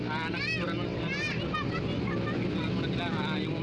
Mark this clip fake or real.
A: real